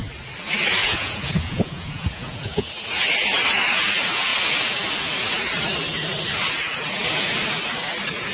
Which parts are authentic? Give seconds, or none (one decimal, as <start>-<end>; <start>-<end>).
0.0-0.8; 2.7-8.3